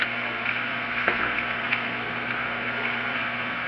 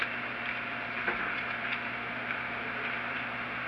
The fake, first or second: first